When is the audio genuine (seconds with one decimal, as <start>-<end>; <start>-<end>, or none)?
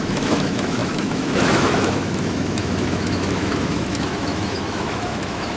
none